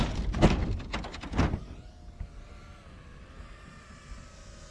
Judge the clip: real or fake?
real